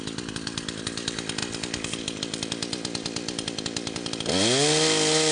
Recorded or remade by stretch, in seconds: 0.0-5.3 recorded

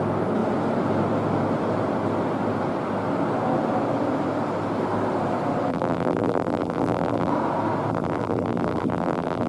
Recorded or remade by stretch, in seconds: 0.0-5.7 recorded; 5.7-7.3 remade; 7.3-7.9 recorded; 7.9-9.5 remade

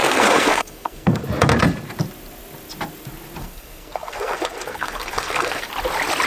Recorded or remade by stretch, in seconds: 0.0-1.2 remade; 1.2-3.4 recorded; 3.4-5.7 remade; 5.7-6.3 recorded

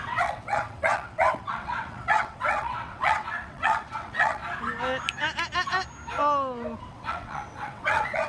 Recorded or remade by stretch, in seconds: 0.0-4.4 remade; 4.4-6.8 recorded; 6.8-8.3 remade

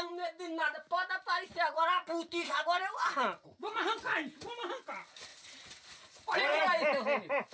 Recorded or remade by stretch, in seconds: 0.0-1.5 recorded; 1.5-4.1 remade; 4.1-5.3 recorded; 5.3-6.6 remade; 6.6-7.5 recorded

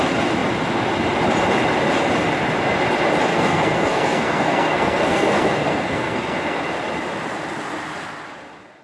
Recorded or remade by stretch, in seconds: 0.0-3.3 recorded; 3.3-6.6 remade; 6.6-8.8 recorded